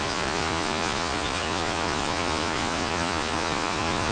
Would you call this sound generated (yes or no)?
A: yes